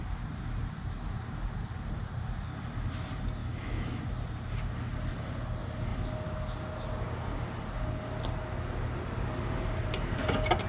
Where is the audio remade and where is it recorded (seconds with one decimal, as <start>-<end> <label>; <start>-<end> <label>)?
0.0-3.4 recorded; 3.4-4.0 remade; 4.0-10.7 recorded